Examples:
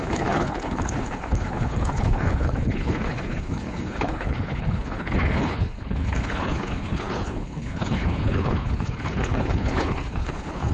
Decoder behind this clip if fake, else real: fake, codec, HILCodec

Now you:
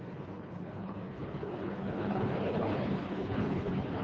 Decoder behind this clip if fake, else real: fake, codec, HILCodec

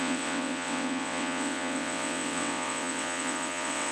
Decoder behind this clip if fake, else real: fake, vocoder, WaveNeXt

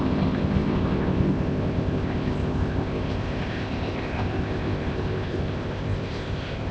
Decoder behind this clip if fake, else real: fake, codec, ZipCodec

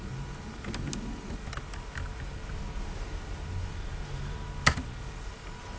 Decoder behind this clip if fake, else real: real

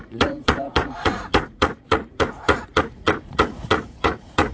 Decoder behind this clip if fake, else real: fake, vocoder, Vocos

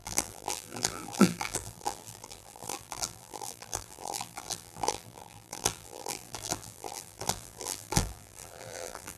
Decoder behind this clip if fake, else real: fake, vocoder, BigVGAN v2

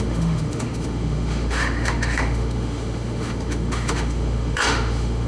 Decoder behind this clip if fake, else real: fake, autoencoder, DAC-VAE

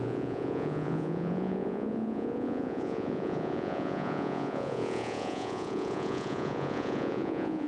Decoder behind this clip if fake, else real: fake, vocoder, Vocos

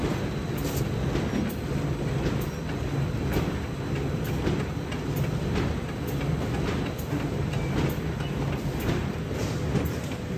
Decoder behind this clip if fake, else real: real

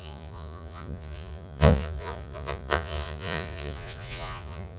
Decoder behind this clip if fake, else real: fake, vocoder, Vocos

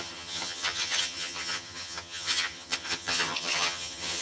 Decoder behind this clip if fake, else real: fake, vocoder, HiFi-GAN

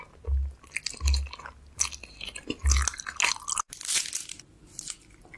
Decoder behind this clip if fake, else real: real